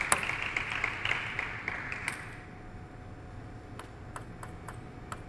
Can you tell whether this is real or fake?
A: real